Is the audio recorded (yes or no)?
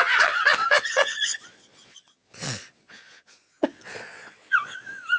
no